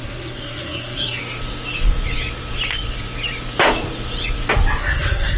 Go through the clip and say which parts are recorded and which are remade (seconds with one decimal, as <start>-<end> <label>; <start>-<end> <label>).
0.0-1.2 remade; 1.2-4.8 recorded; 4.8-5.4 remade